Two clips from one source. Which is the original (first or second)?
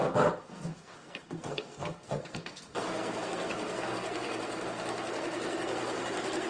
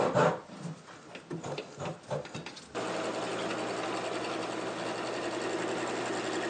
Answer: second